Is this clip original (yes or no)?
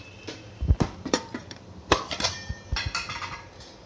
no